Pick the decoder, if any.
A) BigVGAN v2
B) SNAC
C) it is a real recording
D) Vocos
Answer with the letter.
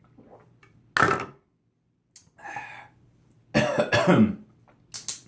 C